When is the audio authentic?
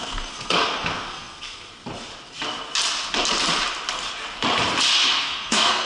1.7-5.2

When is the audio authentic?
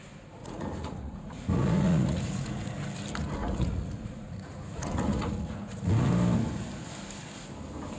0.0-0.4; 2.7-3.4; 6.1-8.0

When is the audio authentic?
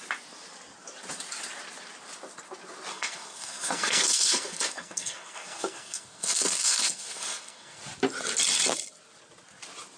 0.0-2.9; 7.8-10.0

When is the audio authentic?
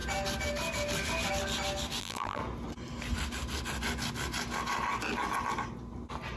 0.0-2.0; 2.4-6.4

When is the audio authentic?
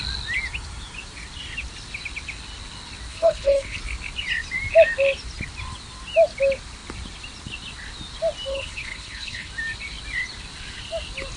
0.0-3.1; 3.8-8.5; 9.5-11.4